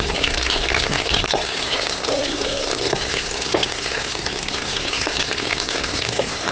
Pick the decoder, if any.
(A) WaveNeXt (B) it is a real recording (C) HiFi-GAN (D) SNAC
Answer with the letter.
D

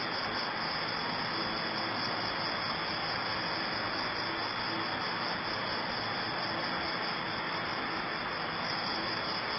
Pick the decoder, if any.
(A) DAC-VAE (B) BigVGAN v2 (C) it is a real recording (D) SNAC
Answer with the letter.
C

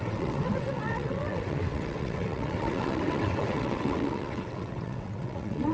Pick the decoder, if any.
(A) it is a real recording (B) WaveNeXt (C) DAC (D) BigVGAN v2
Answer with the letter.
B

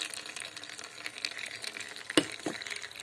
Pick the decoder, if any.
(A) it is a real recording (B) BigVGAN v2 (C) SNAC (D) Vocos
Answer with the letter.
A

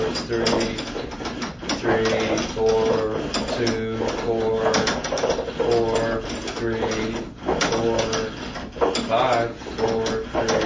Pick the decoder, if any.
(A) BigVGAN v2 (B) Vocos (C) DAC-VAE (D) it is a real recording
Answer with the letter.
D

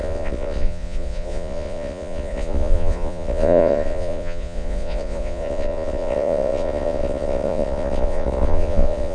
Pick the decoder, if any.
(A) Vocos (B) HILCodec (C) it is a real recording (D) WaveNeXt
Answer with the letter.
A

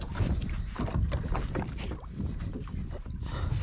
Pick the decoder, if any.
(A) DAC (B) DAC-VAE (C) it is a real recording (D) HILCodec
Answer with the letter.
C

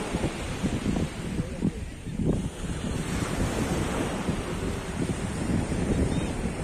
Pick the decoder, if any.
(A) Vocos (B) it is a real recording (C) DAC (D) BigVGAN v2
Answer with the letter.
D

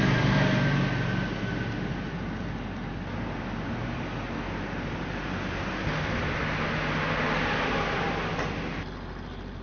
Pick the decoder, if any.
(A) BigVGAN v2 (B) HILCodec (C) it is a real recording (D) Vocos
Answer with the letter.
C